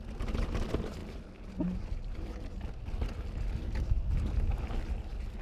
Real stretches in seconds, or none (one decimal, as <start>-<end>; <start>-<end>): 0.0-5.4